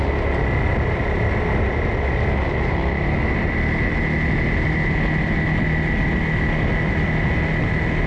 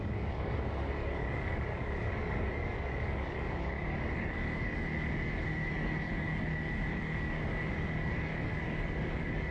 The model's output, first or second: second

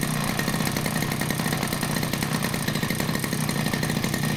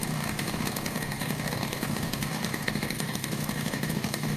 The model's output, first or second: second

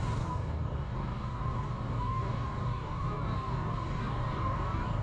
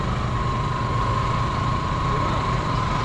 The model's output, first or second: first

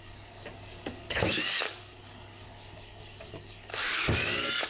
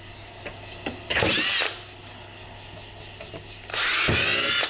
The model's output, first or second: first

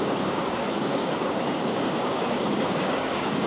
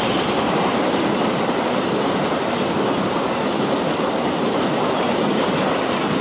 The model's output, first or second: first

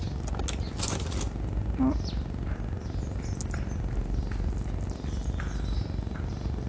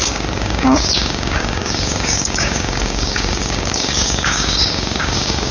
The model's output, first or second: second